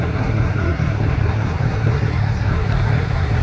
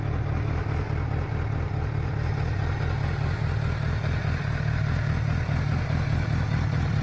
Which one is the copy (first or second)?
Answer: first